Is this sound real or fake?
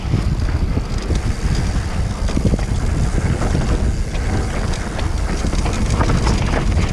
real